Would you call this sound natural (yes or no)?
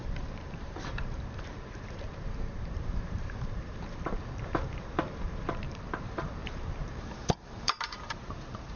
no